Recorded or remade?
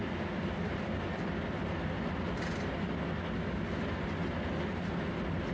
recorded